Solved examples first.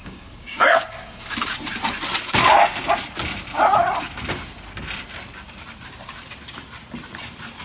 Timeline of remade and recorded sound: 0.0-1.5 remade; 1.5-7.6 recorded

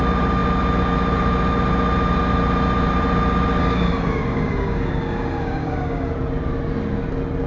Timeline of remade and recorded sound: 0.0-3.6 recorded; 3.6-6.1 remade; 6.1-7.5 recorded

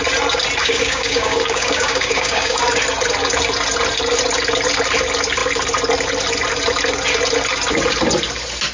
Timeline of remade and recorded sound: 0.0-0.6 recorded; 0.6-2.6 remade; 2.6-8.7 recorded